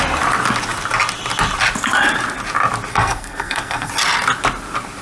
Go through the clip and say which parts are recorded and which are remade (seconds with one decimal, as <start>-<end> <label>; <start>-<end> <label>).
0.0-2.9 recorded; 2.9-3.9 remade; 3.9-5.0 recorded